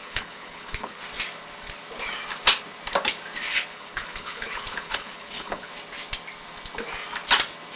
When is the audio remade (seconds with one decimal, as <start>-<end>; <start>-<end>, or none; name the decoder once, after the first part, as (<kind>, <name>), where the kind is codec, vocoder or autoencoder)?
0.0-1.0 (codec, HILCodec); 3.7-5.7